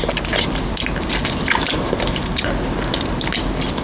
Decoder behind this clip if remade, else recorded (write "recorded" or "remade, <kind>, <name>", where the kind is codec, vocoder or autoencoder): recorded